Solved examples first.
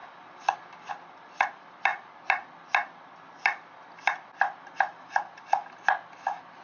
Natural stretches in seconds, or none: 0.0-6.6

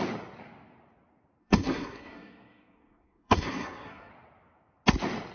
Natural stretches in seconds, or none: 0.0-1.4; 4.1-5.3

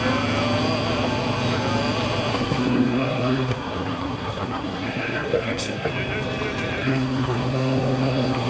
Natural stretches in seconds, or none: 0.0-2.3; 5.9-6.8

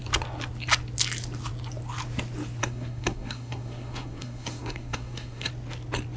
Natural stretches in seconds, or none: 0.0-2.6; 5.5-6.2

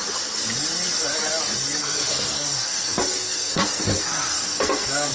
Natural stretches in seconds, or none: 0.0-1.8

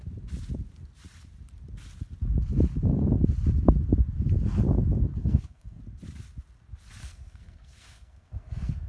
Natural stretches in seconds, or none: 0.0-5.2; 5.8-7.0